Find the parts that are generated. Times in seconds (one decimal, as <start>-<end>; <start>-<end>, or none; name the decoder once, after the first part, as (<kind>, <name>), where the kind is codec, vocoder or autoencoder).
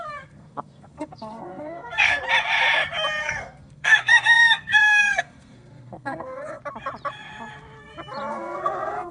0.0-2.2 (codec, SNAC); 3.2-6.6; 8.3-9.1